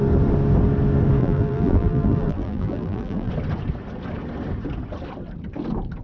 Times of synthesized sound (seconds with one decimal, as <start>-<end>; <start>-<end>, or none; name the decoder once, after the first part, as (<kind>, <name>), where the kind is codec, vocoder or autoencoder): 1.2-3.3 (vocoder, BigVGAN v2)